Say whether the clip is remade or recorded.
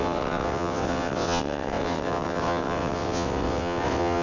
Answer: remade